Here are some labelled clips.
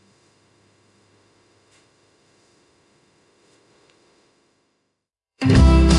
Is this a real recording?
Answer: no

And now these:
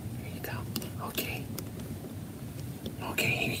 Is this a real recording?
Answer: no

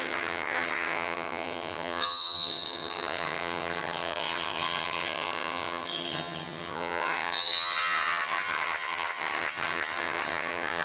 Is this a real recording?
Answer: no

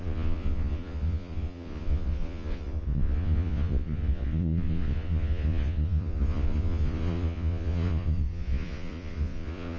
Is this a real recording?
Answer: no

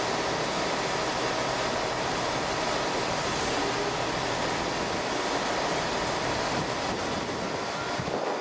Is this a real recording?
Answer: yes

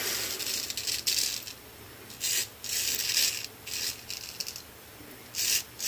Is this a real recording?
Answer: yes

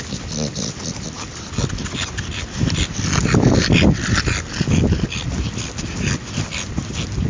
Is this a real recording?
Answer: yes